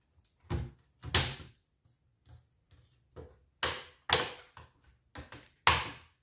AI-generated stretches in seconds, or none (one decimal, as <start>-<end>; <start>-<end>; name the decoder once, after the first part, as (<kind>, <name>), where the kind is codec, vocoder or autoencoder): none